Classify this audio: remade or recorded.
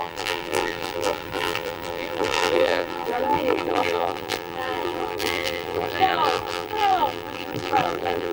remade